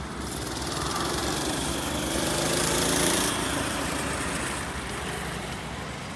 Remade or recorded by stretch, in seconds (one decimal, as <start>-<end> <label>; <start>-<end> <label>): 0.0-6.2 recorded